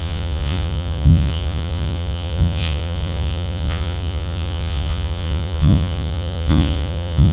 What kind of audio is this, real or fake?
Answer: fake